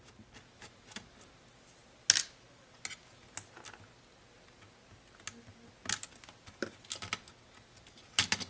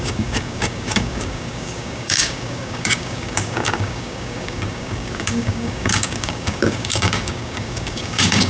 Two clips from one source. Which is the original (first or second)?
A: first